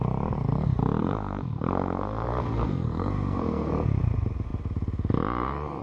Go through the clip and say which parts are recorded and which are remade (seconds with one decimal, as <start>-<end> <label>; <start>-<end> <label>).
0.0-1.0 recorded; 1.0-3.7 remade; 3.7-5.8 recorded